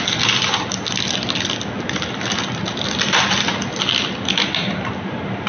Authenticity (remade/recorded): recorded